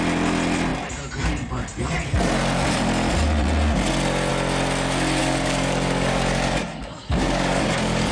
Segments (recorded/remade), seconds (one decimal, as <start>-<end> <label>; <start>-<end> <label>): 0.0-5.2 recorded; 5.2-8.1 remade